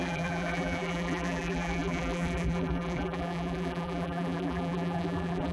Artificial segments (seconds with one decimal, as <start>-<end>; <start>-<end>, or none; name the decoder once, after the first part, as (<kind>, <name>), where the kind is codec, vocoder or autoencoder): 0.0-5.5 (vocoder, BigVGAN v2)